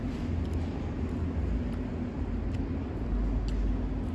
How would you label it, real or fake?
real